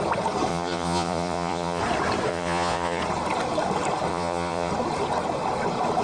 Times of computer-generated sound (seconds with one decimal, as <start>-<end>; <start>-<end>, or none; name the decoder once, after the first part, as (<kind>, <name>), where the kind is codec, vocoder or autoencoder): 0.5-1.8 (vocoder, Vocos); 2.3-3.0; 4.1-4.7